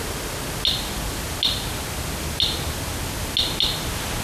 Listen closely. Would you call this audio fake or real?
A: real